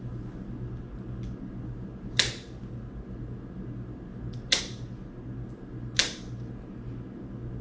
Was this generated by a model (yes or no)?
no